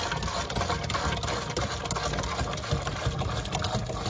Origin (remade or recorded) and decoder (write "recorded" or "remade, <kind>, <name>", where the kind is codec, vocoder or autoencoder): recorded